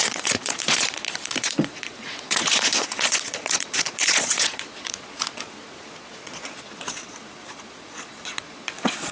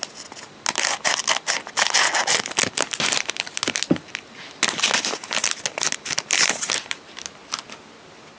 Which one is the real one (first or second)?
second